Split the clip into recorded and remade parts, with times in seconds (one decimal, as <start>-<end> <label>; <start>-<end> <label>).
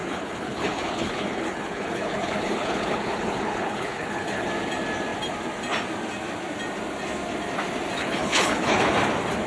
0.0-4.5 remade; 4.5-8.0 recorded; 8.0-8.9 remade; 8.9-9.5 recorded